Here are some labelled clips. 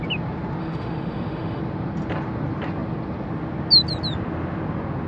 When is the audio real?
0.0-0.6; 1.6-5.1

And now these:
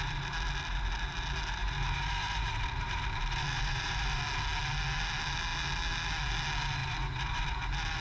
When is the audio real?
0.0-1.6; 4.2-6.8; 7.6-8.0

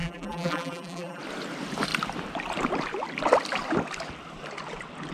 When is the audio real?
1.2-5.1

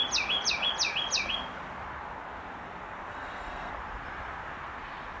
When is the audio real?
0.0-3.1; 3.7-5.2

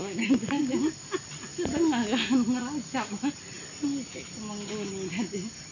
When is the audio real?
0.7-5.7

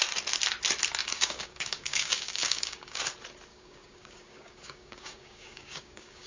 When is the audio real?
0.0-1.0; 3.0-3.5

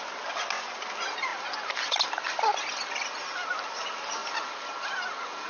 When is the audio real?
0.0-5.5